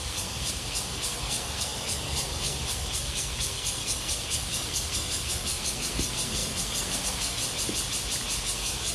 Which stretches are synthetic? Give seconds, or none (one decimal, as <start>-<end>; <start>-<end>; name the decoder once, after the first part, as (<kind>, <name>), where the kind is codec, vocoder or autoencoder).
0.0-7.4 (codec, SNAC); 8.4-8.9